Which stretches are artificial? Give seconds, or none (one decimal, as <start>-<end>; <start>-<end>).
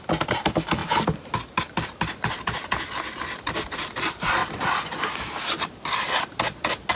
4.4-5.2